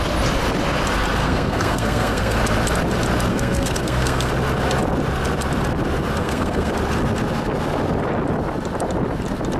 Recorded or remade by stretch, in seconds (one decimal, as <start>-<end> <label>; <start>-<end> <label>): 0.0-1.2 recorded; 1.2-2.4 remade; 2.4-3.3 recorded; 3.3-4.3 remade; 4.3-6.2 recorded; 6.2-6.7 remade; 6.7-9.6 recorded